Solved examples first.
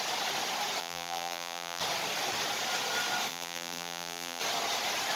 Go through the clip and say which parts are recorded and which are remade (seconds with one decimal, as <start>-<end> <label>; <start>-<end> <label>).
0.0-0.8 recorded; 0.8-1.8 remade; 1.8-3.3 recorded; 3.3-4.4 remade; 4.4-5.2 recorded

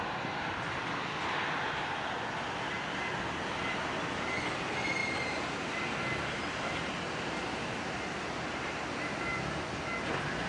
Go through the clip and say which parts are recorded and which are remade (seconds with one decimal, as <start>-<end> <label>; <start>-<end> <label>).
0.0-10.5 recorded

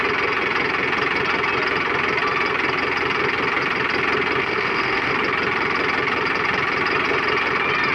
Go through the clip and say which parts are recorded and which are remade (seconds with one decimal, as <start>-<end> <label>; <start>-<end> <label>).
0.0-4.4 recorded; 4.4-5.1 remade; 5.1-7.9 recorded